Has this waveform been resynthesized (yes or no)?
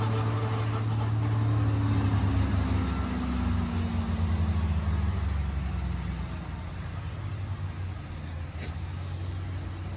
no